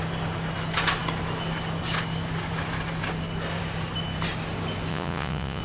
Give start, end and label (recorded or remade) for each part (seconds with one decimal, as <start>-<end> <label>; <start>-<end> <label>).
0.0-4.9 recorded; 4.9-5.6 remade